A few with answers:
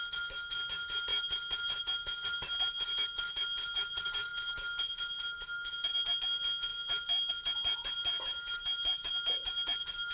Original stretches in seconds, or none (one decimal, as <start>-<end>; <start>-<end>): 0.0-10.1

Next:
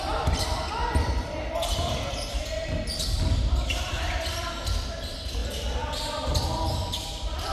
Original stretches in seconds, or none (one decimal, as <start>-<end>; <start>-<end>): 5.4-6.3

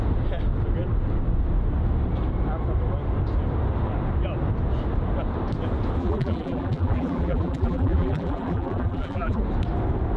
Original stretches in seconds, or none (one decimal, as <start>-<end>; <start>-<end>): 0.0-6.0; 9.4-10.2

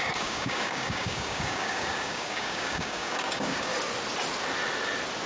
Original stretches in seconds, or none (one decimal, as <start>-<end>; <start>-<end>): 3.7-5.3

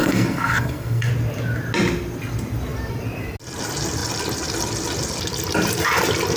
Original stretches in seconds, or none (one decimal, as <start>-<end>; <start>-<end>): 1.1-6.4

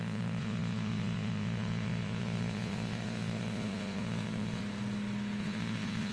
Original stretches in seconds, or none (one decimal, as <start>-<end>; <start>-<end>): 4.6-5.4